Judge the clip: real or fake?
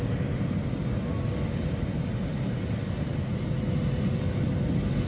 real